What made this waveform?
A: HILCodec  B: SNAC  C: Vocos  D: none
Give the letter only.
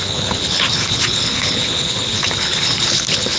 A